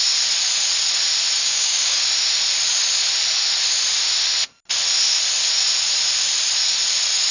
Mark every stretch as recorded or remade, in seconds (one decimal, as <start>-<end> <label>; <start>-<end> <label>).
0.0-1.4 recorded; 1.4-2.0 remade; 2.0-7.3 recorded